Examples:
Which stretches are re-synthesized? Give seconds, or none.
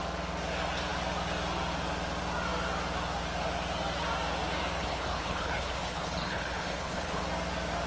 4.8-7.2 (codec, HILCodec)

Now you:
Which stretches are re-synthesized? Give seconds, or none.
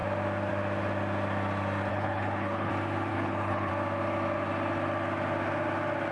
1.9-2.7 (codec, HILCodec); 3.1-3.7